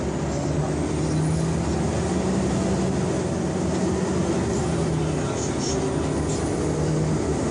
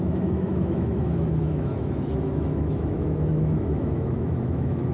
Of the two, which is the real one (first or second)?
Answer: first